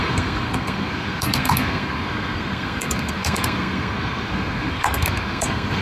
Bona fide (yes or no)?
no